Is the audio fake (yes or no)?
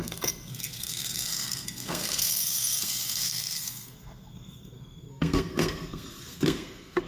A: yes